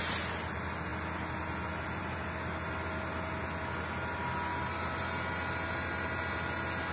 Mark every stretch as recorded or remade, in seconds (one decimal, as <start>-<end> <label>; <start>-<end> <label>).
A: 0.0-4.5 recorded; 4.5-5.0 remade; 5.0-6.9 recorded